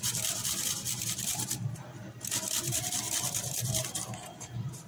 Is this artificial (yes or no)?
no